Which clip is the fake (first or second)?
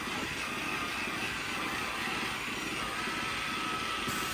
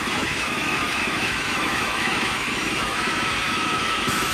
second